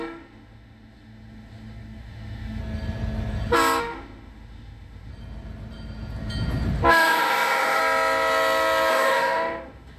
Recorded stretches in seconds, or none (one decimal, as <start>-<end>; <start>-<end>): 2.6-3.8; 5.1-6.9; 7.8-8.9